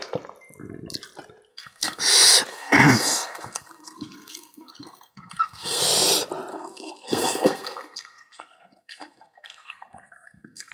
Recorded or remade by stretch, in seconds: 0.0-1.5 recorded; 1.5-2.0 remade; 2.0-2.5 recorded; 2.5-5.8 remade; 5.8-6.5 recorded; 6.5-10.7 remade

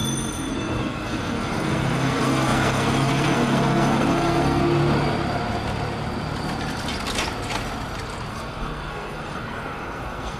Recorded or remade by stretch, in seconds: 0.0-0.5 recorded; 0.5-4.6 remade; 4.6-8.3 recorded; 8.3-10.4 remade

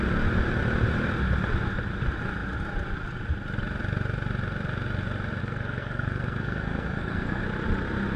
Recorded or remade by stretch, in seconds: 0.0-5.4 recorded; 5.4-7.4 remade; 7.4-8.2 recorded

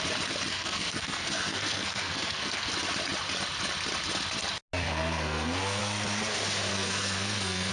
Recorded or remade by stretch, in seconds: 0.0-0.5 recorded; 0.5-2.7 remade; 2.7-4.8 recorded; 4.8-5.8 remade; 5.8-6.7 recorded; 6.7-7.7 remade